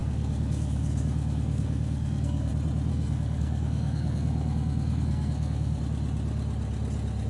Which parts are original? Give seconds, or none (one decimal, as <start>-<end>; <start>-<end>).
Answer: 2.5-2.9; 5.8-7.3